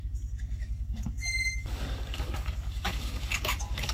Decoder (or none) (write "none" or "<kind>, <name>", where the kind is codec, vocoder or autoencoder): codec, DAC